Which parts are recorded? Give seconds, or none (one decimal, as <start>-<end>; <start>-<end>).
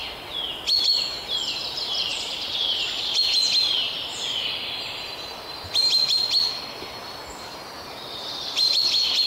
0.0-9.3